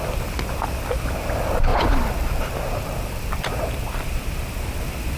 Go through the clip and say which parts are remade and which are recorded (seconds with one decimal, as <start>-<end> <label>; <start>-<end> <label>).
0.0-5.2 recorded